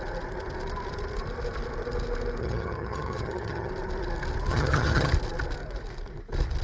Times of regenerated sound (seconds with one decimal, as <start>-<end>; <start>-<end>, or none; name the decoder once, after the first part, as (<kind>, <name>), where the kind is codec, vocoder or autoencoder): 2.4-3.7 (vocoder, HiFi-GAN); 4.5-5.1